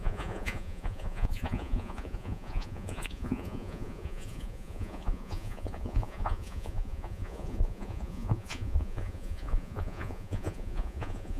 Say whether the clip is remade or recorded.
remade